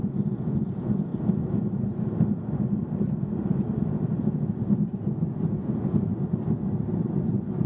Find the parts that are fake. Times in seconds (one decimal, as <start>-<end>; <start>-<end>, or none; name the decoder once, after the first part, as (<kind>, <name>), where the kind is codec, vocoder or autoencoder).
0.0-1.1 (vocoder, Vocos); 5.6-6.1